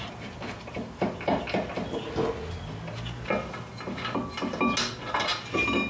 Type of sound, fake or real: real